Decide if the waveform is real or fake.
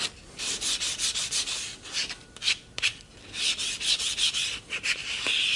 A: fake